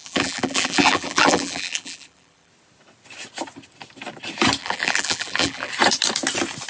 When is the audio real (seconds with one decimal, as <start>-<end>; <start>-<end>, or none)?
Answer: 2.5-4.6; 5.7-6.7